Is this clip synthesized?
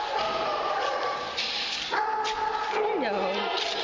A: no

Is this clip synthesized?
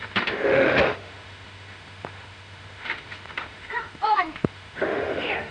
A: yes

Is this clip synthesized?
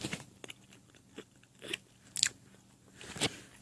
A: no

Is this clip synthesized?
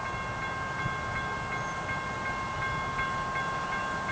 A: no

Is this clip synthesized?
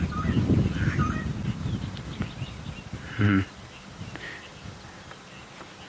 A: no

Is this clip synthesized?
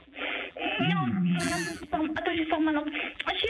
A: yes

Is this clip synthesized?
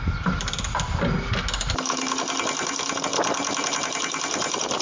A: no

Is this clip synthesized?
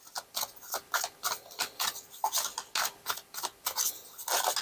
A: no